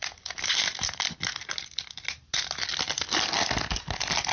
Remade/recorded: recorded